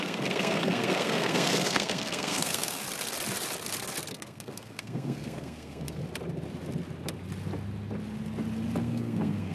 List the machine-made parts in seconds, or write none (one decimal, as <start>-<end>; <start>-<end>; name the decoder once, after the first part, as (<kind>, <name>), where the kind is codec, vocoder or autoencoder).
0.0-2.8 (codec, SNAC); 4.1-6.0; 8.8-9.5